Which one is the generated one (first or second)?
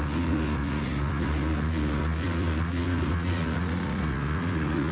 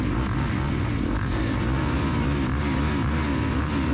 first